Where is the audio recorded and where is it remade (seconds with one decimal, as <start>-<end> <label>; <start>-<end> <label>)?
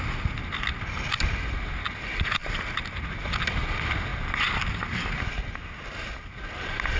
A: 0.0-7.0 recorded